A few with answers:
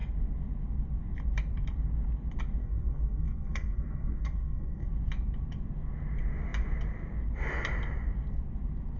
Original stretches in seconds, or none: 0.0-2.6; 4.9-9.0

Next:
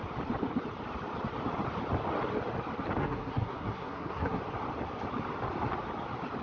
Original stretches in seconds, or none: 0.0-3.0; 4.4-6.4

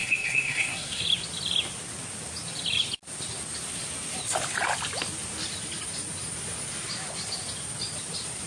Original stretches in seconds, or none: 1.0-8.5